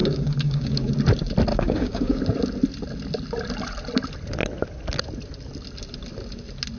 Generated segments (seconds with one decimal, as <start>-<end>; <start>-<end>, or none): 0.0-0.9; 1.5-2.2